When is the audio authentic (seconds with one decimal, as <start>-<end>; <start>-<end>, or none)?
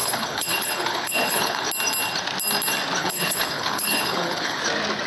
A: 1.7-3.0; 4.6-5.1